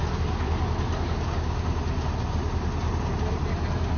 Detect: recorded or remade recorded